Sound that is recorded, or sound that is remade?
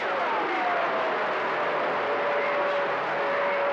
recorded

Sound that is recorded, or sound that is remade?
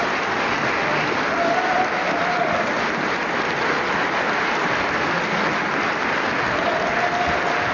recorded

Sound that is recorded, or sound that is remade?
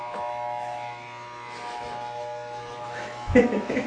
remade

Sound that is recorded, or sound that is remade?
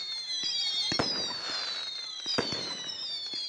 recorded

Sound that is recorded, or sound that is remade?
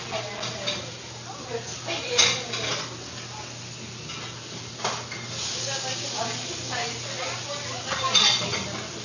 recorded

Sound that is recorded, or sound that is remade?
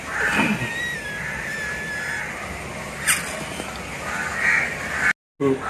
recorded